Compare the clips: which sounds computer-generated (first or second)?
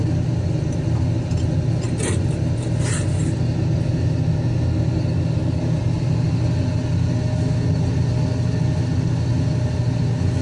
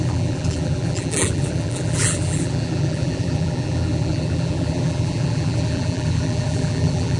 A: second